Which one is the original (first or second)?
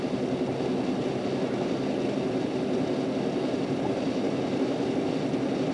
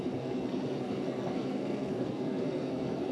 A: first